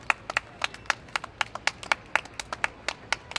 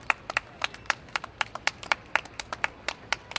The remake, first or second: second